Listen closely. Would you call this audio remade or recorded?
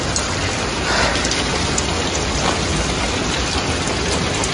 recorded